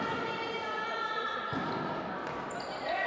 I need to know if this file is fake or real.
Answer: real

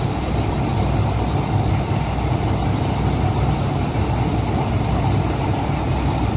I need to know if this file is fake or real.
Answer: real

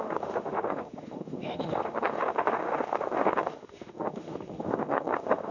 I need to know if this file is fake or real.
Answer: fake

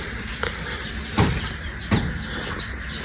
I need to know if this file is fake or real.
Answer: real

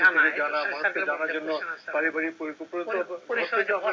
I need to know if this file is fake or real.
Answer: real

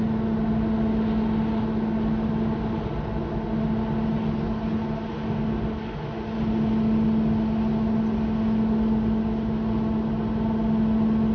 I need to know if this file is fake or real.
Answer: real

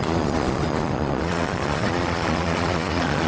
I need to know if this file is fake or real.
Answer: fake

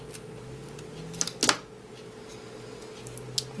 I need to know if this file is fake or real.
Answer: real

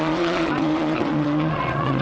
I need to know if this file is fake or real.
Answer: fake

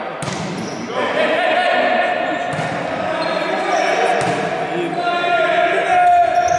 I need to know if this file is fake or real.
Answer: real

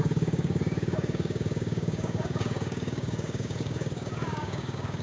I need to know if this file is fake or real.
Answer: fake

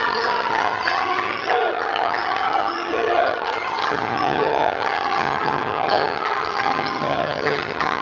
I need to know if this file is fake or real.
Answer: fake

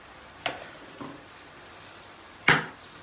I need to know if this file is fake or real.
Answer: real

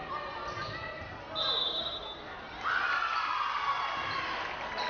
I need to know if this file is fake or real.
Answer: real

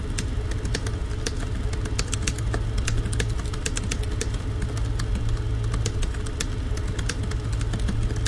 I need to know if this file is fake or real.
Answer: real